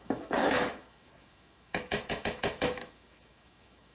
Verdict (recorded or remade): remade